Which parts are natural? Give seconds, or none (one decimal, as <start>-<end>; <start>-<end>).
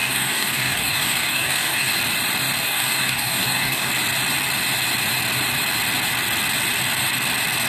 1.9-2.6; 3.9-7.7